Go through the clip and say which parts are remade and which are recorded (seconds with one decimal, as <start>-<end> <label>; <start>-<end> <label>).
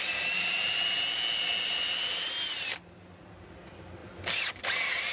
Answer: 0.0-5.1 recorded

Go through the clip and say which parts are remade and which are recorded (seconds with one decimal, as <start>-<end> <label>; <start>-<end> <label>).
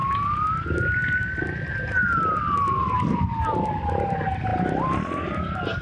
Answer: 0.0-5.8 recorded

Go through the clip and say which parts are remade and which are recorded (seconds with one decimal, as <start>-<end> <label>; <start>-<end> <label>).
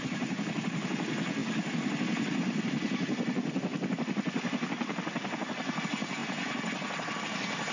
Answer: 0.0-7.7 recorded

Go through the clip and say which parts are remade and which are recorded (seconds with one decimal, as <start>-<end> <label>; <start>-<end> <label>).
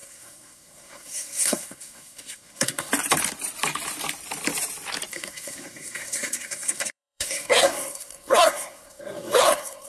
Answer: 0.0-2.9 remade; 2.9-5.1 recorded; 5.1-9.9 remade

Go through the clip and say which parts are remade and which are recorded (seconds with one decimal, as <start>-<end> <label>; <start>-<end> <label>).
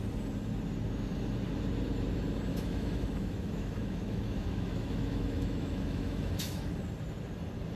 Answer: 0.0-2.5 recorded; 2.5-6.6 remade; 6.6-7.8 recorded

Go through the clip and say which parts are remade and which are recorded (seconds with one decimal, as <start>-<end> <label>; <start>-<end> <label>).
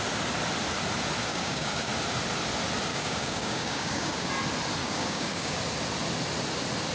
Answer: 0.0-1.3 recorded; 1.3-1.9 remade; 1.9-2.9 recorded; 2.9-4.3 remade; 4.3-4.8 recorded; 4.8-5.6 remade; 5.6-6.9 recorded